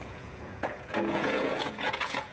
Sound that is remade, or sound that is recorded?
remade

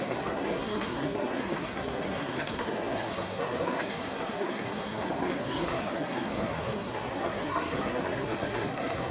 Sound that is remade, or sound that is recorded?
remade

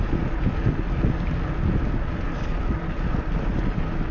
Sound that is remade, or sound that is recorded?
recorded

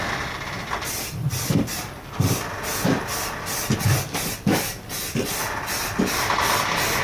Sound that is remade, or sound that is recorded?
recorded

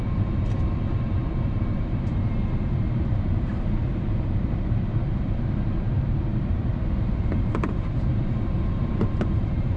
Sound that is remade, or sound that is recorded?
remade